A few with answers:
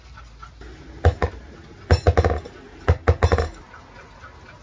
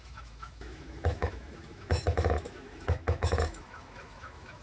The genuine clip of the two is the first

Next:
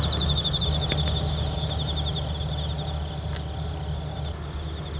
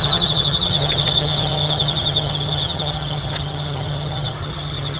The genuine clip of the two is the first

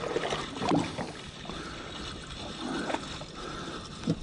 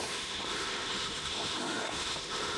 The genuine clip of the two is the first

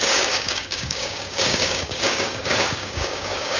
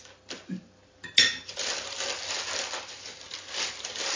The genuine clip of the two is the second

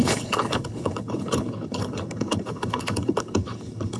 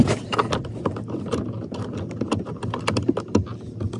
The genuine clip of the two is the second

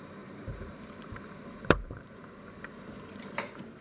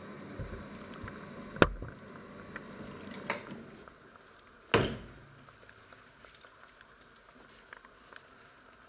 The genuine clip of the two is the second